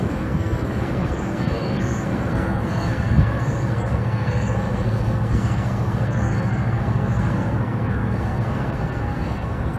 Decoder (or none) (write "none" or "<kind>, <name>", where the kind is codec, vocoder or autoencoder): codec, SNAC